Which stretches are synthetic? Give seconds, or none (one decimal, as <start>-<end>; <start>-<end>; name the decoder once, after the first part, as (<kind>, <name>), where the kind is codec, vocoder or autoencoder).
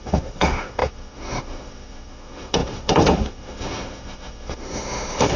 0.0-5.4 (autoencoder, DAC-VAE)